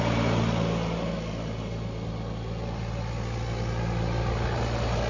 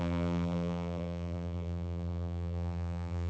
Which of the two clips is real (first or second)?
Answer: first